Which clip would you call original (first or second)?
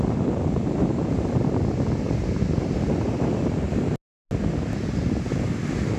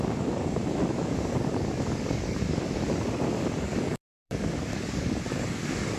first